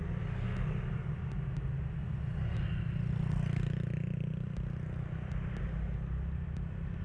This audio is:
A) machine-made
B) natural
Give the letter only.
B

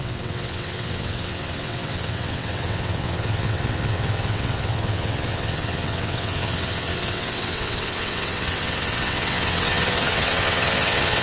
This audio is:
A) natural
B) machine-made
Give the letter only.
B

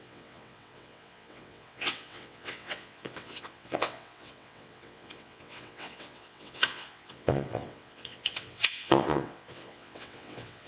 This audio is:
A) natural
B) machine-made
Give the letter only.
B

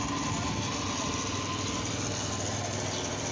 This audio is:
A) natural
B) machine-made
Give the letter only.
A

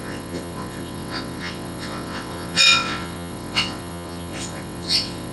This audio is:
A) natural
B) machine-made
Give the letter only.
B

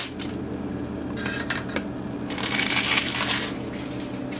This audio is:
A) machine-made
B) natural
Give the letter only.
B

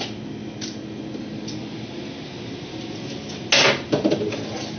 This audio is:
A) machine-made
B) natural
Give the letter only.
B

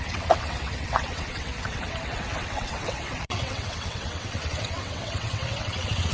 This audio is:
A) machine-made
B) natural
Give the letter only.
A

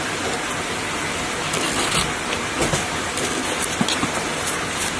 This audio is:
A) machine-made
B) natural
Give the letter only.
B